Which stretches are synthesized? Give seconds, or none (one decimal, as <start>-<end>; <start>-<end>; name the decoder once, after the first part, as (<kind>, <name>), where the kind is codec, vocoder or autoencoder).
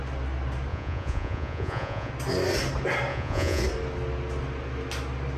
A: 0.7-2.1 (vocoder, Vocos); 3.1-3.6